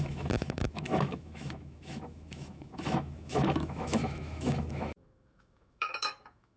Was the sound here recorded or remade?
remade